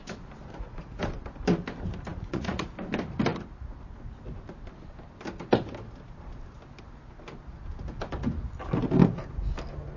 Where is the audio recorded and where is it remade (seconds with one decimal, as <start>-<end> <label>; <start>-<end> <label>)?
0.0-0.5 recorded; 0.5-1.0 remade; 1.0-2.1 recorded; 2.1-2.7 remade; 2.7-10.0 recorded